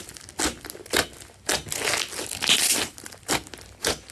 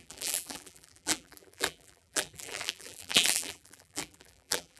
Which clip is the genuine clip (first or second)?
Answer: first